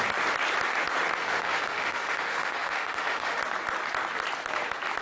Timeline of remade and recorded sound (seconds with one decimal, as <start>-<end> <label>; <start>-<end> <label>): 0.0-1.2 recorded; 1.2-3.4 remade; 3.4-5.0 recorded